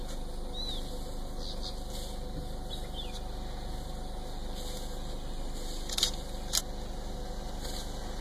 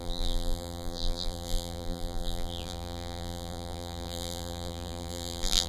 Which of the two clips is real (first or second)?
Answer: first